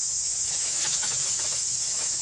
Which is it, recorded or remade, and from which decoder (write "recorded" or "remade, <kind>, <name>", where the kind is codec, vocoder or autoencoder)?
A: remade, autoencoder, DAC-VAE